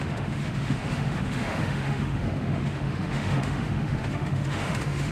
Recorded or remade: remade